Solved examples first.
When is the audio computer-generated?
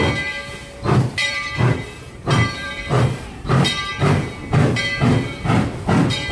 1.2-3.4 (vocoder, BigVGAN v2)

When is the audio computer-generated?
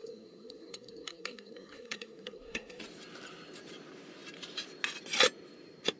0.0-2.8 (codec, SNAC)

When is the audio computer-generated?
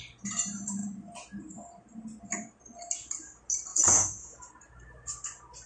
3.7-4.5 (vocoder, Vocos)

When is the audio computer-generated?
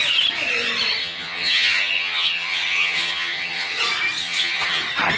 1.0-3.8 (vocoder, HiFi-GAN); 4.2-4.8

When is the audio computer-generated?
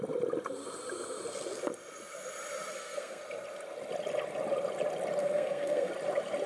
2.7-3.2 (codec, SNAC); 5.2-5.9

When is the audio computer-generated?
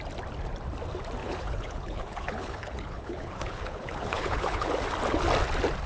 1.2-4.7 (codec, HILCodec)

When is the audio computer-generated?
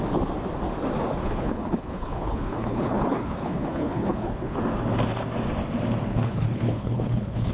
1.2-4.6 (codec, HILCodec); 6.1-7.5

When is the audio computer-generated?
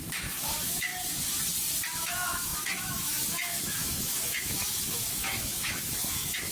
0.0-0.9 (autoencoder, DAC-VAE); 2.0-6.5